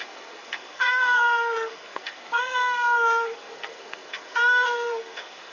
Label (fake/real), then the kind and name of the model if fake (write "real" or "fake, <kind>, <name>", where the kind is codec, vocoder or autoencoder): fake, codec, SNAC